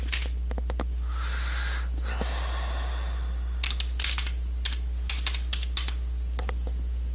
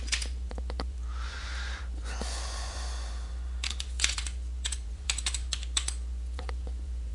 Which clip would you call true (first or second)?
first